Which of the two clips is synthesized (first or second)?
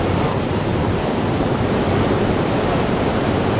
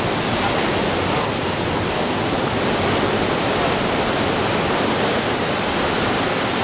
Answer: first